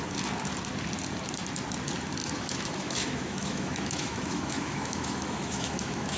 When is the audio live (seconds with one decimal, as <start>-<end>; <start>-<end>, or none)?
0.0-2.2